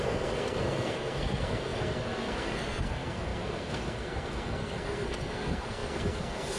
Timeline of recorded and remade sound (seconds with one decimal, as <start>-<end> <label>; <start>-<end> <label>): 0.0-6.6 remade